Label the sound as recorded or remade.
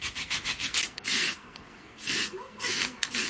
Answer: remade